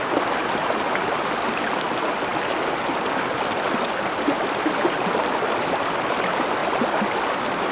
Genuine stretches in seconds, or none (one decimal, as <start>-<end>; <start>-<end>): 0.0-7.7